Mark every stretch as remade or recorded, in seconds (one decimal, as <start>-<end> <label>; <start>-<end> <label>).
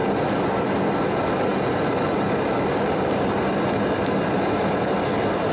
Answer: 0.0-5.5 recorded